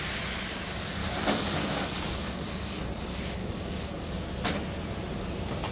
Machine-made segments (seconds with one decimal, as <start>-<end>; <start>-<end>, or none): 1.0-2.9; 3.4-4.1

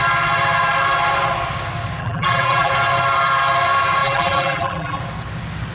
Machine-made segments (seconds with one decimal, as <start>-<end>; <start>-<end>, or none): 2.0-2.7; 4.0-5.0

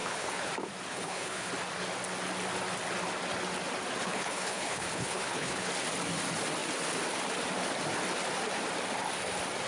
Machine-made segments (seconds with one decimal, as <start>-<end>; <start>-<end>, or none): 0.0-0.5; 0.9-1.5; 4.0-5.7

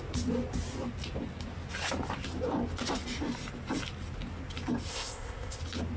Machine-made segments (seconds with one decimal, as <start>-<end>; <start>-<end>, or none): 4.9-5.6

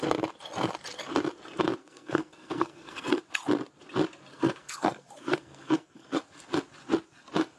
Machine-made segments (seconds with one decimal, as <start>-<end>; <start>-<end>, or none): 1.8-3.2; 4.3-6.2